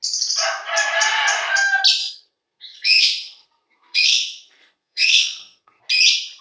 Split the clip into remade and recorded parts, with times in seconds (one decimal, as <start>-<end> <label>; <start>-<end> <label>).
0.0-2.0 recorded; 2.0-5.8 remade; 5.8-6.4 recorded